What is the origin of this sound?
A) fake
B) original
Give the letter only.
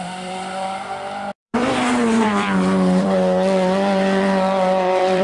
A